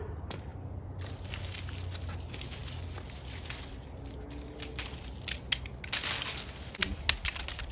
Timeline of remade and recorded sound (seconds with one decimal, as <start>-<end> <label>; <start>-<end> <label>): 0.0-7.7 recorded